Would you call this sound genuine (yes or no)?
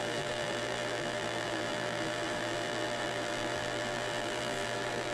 no